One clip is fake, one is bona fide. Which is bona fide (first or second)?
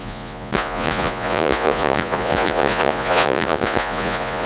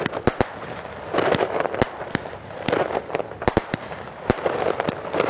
second